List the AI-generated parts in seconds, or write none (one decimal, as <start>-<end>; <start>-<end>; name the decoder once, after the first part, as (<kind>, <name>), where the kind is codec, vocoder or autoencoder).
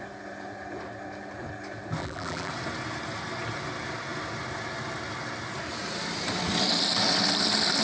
2.0-2.5 (vocoder, BigVGAN v2)